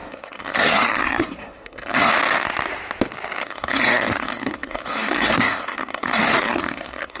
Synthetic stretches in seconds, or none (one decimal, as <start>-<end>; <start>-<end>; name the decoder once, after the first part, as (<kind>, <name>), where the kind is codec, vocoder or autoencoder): 0.0-2.1 (codec, SNAC); 3.4-7.2